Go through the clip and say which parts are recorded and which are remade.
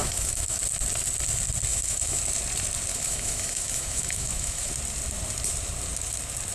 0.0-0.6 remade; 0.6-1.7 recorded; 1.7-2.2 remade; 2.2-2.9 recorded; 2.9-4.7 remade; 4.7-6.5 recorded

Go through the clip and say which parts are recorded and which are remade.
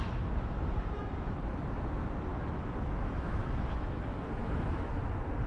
0.0-2.3 recorded; 2.3-4.0 remade; 4.0-4.4 recorded; 4.4-4.9 remade; 4.9-5.5 recorded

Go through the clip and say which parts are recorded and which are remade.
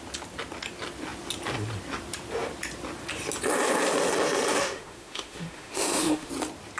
0.0-4.5 recorded; 4.5-6.3 remade; 6.3-6.8 recorded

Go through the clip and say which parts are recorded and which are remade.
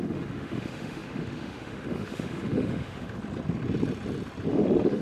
0.0-3.2 remade; 3.2-4.5 recorded; 4.5-5.0 remade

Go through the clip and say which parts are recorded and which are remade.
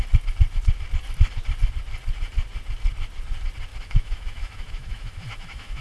0.0-3.7 recorded; 3.7-5.8 remade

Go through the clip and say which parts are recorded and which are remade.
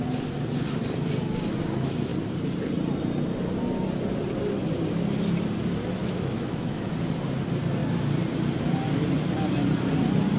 0.0-6.0 recorded; 6.0-6.9 remade; 6.9-10.4 recorded